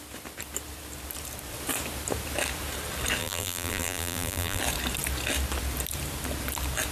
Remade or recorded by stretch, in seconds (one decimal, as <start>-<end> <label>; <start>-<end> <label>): 0.0-3.2 recorded; 3.2-4.6 remade; 4.6-6.9 recorded